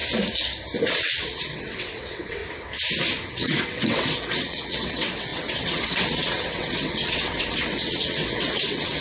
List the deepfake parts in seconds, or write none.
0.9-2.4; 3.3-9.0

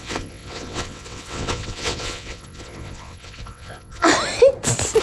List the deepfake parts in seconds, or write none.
0.0-4.1

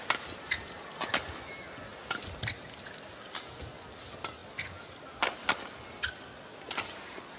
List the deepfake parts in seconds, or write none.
none